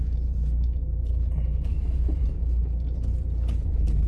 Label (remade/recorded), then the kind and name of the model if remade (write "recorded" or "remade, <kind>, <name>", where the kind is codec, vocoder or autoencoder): recorded